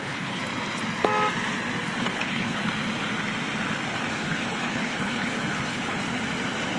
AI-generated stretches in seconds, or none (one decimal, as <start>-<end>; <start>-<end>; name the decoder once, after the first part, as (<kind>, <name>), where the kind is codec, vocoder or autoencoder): 0.0-0.4 (codec, HILCodec); 2.0-2.6; 4.1-6.0